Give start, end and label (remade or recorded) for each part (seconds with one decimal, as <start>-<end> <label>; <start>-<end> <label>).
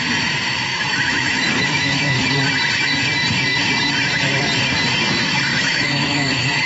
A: 0.0-0.7 recorded; 0.7-2.3 remade; 2.3-5.5 recorded; 5.5-6.7 remade